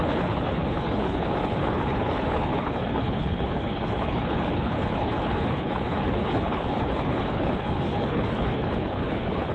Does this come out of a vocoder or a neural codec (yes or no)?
yes